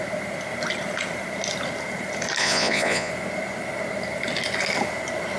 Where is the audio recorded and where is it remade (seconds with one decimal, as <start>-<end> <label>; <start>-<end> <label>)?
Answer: 0.0-2.4 recorded; 2.4-3.1 remade; 3.1-5.4 recorded